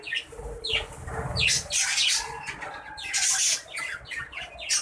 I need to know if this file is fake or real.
real